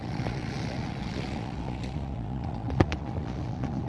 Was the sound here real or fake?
fake